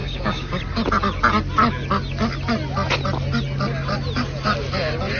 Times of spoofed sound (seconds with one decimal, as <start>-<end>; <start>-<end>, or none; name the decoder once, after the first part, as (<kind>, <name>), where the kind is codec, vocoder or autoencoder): 0.0-0.6 (codec, DAC)